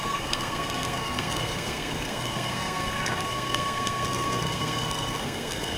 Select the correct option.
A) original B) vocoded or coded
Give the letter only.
B